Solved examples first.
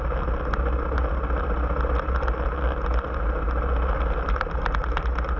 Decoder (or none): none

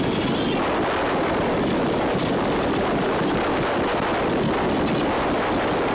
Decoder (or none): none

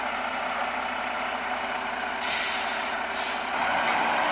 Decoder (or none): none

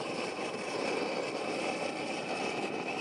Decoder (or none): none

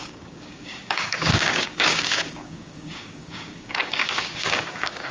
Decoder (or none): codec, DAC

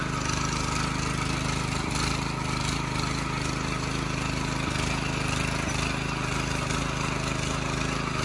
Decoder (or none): none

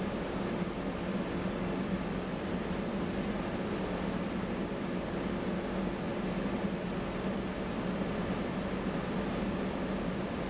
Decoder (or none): none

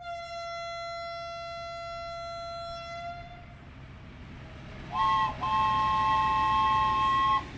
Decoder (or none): none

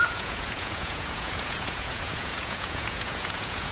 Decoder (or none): vocoder, Vocos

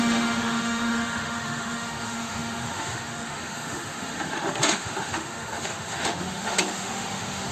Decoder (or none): autoencoder, DAC-VAE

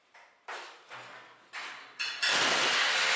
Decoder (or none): none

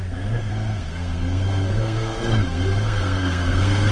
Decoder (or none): codec, SNAC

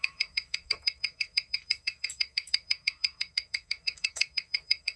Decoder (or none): codec, SNAC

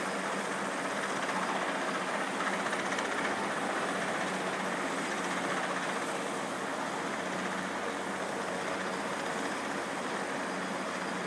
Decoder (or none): none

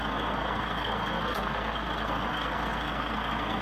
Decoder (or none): codec, SNAC